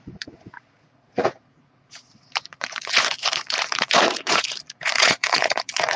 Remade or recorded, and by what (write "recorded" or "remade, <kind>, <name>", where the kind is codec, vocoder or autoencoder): remade, vocoder, Vocos